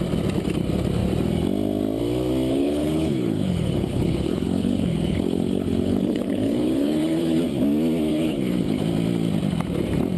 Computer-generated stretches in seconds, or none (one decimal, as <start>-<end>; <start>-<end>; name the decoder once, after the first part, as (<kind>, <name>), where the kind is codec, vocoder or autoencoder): 2.5-7.4 (codec, HILCodec); 8.1-8.8